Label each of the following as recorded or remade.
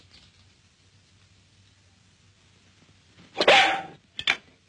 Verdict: recorded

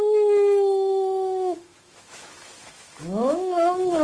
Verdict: remade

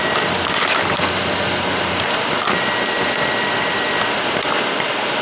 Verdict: recorded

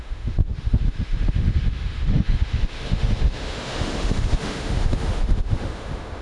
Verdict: remade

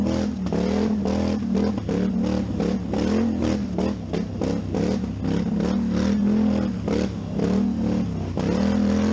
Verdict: recorded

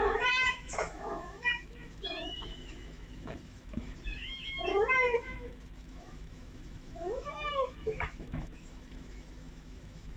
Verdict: remade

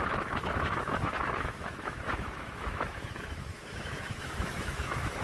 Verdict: remade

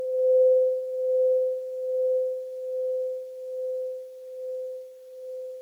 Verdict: recorded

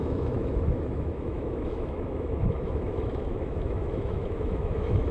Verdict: remade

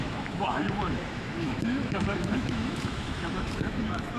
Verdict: remade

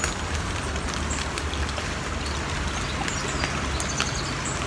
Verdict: recorded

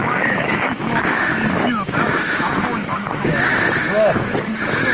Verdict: remade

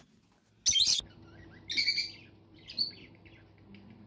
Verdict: recorded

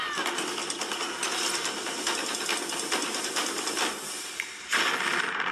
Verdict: recorded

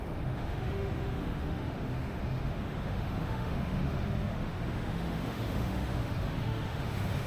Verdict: remade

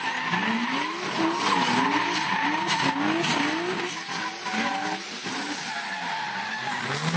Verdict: recorded